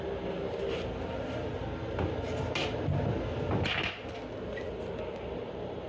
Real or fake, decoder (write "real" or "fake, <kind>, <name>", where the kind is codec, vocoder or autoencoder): real